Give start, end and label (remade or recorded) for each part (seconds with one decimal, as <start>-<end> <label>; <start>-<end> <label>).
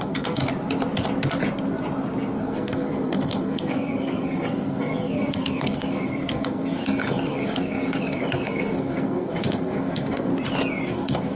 0.0-0.4 remade; 0.4-2.4 recorded; 2.4-10.3 remade; 10.3-10.9 recorded; 10.9-11.3 remade